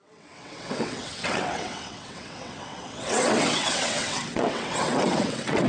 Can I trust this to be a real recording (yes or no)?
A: no